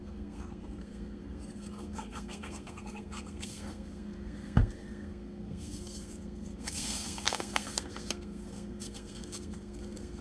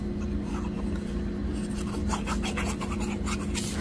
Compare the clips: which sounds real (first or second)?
second